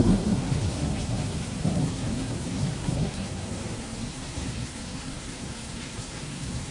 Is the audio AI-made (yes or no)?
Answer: yes